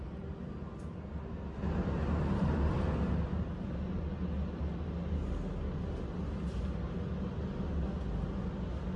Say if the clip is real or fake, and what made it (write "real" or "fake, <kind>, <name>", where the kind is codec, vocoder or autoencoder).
real